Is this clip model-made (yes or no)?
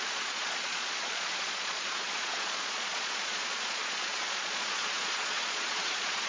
yes